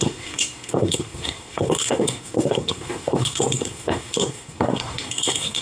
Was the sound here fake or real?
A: fake